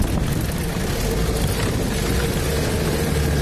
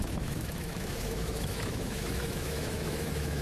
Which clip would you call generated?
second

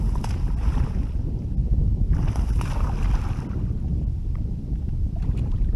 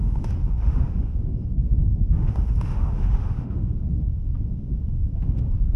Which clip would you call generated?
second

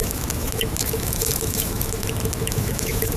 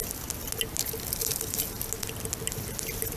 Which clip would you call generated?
first